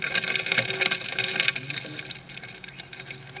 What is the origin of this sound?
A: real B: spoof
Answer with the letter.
A